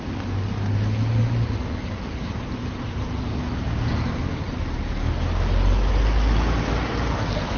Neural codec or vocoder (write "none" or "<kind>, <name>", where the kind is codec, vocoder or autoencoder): none